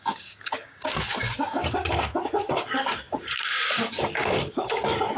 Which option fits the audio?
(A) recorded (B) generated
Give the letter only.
B